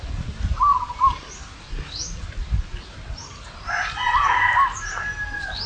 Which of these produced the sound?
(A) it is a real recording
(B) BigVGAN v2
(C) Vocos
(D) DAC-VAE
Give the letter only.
A